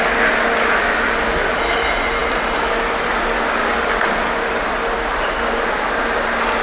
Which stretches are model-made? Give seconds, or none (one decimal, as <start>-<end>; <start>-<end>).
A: none